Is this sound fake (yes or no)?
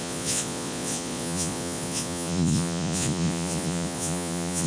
yes